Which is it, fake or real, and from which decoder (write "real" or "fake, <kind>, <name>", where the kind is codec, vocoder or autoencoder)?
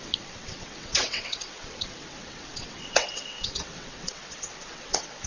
fake, vocoder, WaveNeXt